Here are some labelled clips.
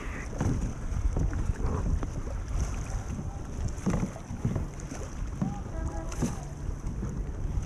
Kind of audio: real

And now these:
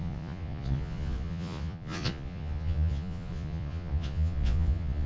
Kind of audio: fake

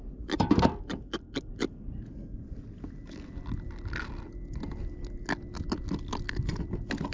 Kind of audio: real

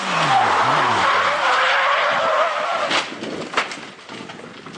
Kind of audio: real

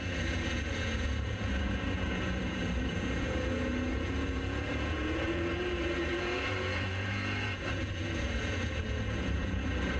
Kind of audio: fake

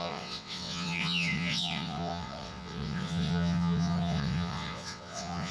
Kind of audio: fake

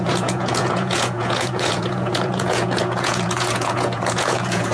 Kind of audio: fake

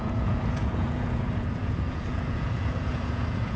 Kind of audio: fake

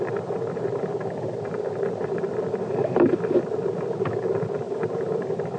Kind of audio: real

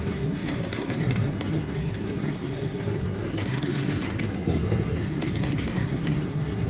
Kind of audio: fake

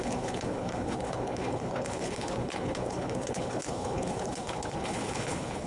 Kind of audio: fake